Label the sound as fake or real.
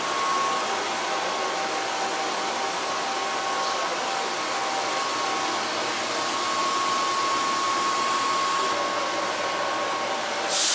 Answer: real